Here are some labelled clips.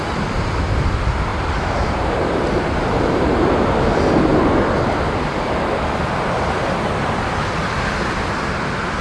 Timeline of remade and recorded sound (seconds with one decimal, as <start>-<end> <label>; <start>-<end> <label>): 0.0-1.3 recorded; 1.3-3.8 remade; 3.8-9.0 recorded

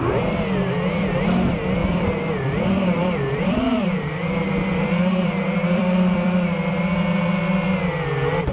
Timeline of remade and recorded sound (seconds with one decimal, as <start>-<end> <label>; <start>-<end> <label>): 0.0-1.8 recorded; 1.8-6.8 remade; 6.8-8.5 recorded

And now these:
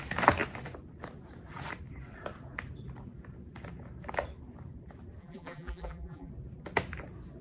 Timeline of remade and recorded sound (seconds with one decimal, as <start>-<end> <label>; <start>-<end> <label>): 0.0-5.2 recorded; 5.2-6.3 remade; 6.3-7.4 recorded

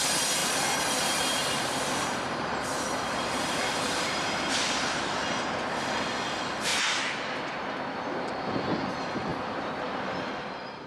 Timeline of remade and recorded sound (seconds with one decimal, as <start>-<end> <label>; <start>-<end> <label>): 0.0-0.4 recorded; 0.4-4.4 remade; 4.4-9.3 recorded; 9.3-10.9 remade

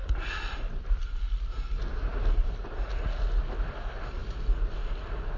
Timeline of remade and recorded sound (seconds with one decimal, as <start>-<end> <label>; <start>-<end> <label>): 0.0-5.4 recorded